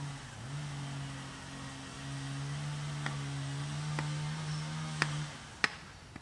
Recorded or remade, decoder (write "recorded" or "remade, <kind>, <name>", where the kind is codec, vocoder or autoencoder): recorded